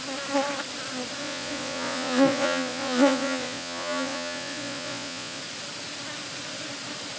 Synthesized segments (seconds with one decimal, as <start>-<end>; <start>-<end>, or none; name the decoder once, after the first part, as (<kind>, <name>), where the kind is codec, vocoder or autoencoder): 1.2-5.4 (vocoder, Vocos)